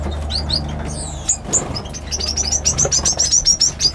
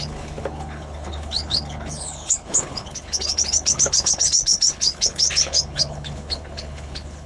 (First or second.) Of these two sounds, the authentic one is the first